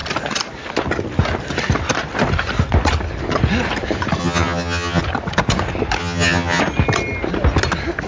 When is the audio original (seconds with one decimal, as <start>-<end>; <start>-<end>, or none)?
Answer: 0.0-4.2; 5.0-6.0; 6.6-8.1